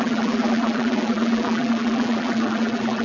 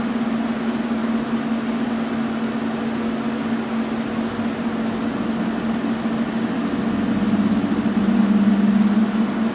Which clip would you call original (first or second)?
second